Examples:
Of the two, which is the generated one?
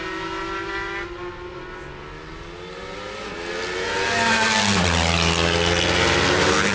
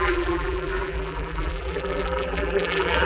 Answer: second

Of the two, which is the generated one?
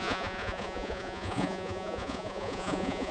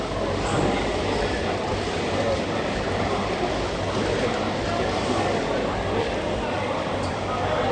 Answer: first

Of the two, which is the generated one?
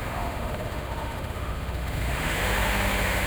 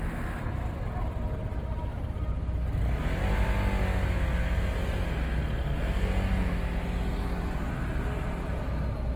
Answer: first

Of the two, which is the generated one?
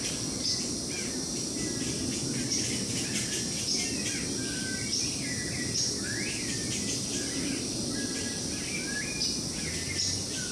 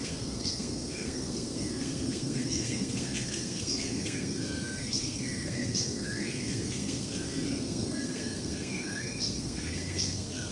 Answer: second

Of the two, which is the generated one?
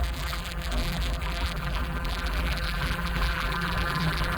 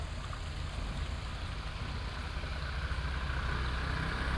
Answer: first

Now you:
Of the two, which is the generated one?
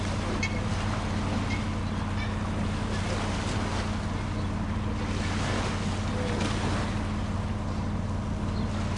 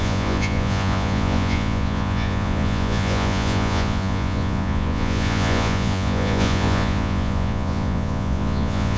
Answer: second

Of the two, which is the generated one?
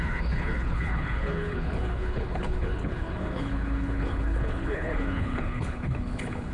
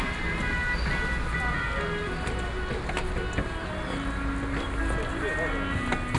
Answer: first